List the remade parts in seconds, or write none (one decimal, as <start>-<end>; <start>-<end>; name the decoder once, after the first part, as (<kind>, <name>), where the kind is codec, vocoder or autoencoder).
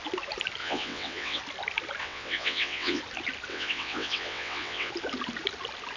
0.6-1.4 (vocoder, WaveNeXt); 2.0-3.0; 3.5-4.9